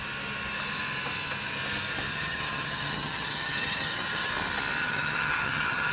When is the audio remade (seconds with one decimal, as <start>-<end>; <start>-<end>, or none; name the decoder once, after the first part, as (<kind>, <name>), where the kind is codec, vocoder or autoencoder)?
2.1-4.3 (vocoder, HiFi-GAN); 4.8-5.9